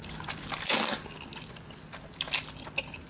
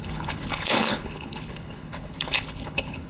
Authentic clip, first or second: first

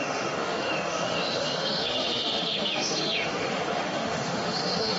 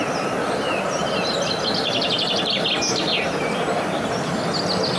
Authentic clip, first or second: second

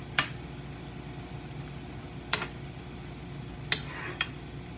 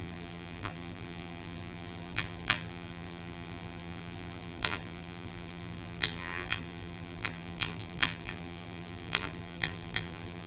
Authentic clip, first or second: first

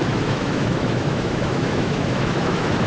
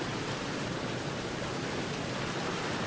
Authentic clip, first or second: second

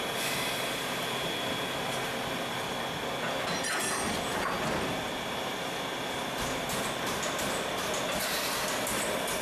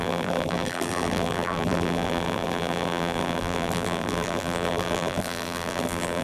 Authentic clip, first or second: first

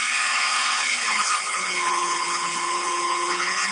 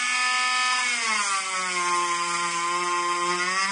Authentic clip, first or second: second